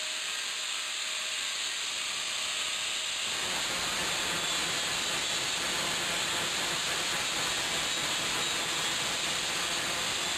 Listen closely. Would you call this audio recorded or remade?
recorded